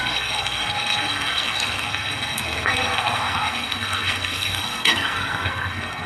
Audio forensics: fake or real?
fake